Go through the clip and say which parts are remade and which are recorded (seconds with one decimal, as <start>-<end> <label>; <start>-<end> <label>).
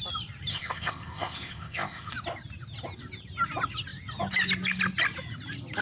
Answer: 0.0-0.5 recorded; 0.5-2.1 remade; 2.1-5.8 recorded